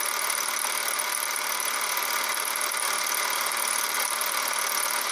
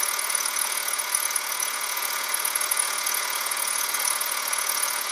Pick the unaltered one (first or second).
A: first